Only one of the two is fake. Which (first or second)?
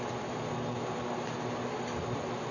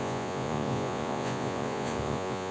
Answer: second